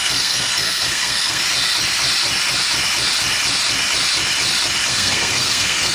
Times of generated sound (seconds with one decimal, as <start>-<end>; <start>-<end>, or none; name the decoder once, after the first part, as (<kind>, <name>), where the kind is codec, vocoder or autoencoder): 0.0-1.4 (codec, SNAC); 4.9-5.9